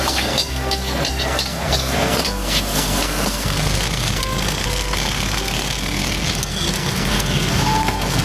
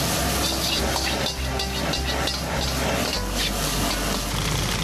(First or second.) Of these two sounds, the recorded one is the second